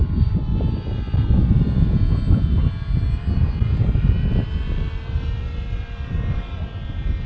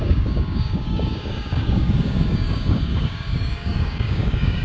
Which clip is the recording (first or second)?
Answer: first